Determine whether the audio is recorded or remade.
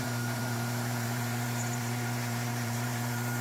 remade